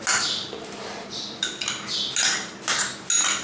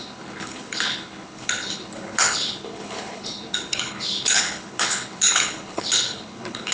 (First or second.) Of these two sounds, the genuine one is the first